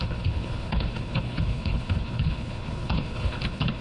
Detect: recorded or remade remade